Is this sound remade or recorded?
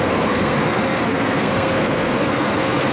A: remade